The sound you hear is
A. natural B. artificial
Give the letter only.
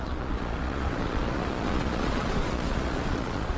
B